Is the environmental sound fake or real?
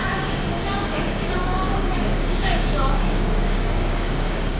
fake